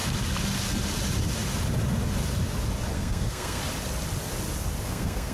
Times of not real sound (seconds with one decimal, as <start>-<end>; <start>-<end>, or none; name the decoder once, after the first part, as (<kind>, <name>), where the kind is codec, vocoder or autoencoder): 2.9-3.6 (codec, SNAC); 4.8-5.3